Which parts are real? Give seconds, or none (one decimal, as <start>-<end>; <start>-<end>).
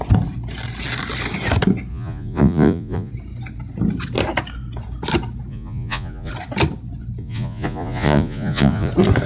0.0-1.9; 3.1-5.5; 6.3-7.2; 8.9-9.3